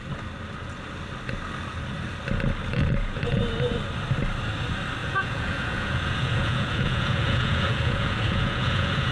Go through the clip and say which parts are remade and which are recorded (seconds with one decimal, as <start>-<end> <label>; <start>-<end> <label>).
0.0-2.7 recorded; 2.7-3.4 remade; 3.4-5.0 recorded; 5.0-9.1 remade